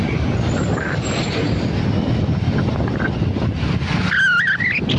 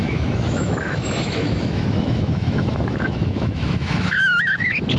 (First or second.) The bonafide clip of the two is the first